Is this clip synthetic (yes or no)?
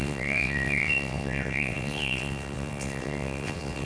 yes